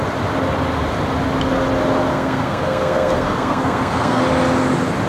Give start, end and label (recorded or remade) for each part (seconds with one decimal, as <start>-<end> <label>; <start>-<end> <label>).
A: 0.0-2.1 recorded; 2.1-4.2 remade; 4.2-5.1 recorded